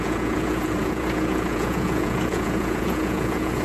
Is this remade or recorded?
remade